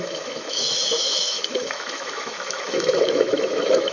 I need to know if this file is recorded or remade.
remade